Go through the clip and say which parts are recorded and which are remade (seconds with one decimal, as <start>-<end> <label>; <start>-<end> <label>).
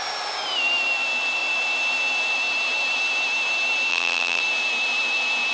0.0-3.9 recorded; 3.9-4.4 remade; 4.4-5.5 recorded